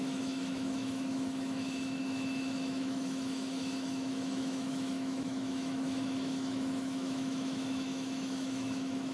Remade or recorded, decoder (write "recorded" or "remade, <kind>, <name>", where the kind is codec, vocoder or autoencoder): remade, autoencoder, DAC-VAE